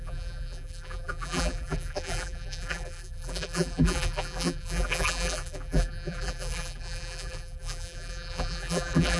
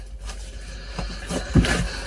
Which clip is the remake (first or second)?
first